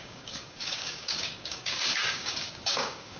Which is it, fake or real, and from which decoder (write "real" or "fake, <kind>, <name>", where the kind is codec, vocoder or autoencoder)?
fake, codec, DAC